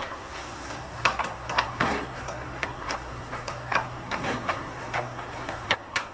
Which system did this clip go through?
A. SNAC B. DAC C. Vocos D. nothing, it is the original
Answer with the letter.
A